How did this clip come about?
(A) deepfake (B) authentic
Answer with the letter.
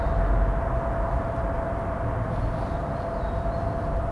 B